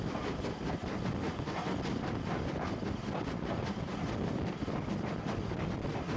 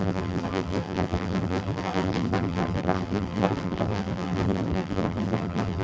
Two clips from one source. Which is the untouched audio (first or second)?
first